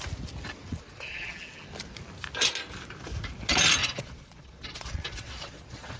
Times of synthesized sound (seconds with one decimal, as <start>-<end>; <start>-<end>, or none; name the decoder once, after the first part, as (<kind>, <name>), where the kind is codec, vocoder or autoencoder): 0.6-1.3 (vocoder, Vocos); 3.8-6.0